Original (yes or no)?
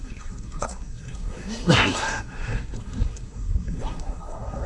no